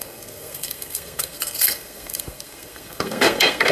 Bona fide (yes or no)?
no